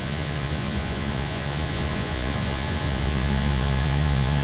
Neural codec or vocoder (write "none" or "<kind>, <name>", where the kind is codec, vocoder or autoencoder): vocoder, Vocos